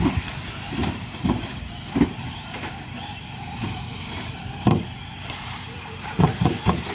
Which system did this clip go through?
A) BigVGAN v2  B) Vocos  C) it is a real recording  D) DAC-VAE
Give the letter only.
A